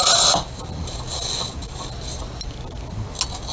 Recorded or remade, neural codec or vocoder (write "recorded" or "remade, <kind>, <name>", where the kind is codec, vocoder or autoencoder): recorded